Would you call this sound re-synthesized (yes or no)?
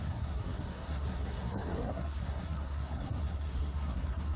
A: yes